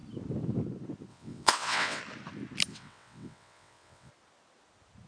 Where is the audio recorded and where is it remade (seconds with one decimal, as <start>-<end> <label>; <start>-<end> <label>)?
0.0-1.1 recorded; 1.1-2.0 remade; 2.0-2.7 recorded; 2.7-4.1 remade; 4.1-5.1 recorded